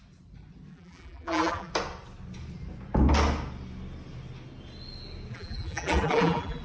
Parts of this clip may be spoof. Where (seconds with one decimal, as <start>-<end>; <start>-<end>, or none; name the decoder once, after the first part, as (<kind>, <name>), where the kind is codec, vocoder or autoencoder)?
0.7-1.7 (vocoder, BigVGAN v2); 5.3-6.6